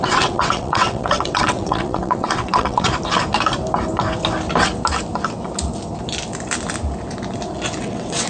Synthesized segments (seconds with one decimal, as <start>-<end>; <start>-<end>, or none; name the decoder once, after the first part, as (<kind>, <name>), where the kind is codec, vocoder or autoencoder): 0.0-2.9 (vocoder, WaveNeXt); 7.8-8.3